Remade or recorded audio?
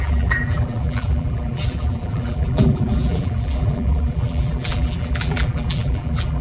remade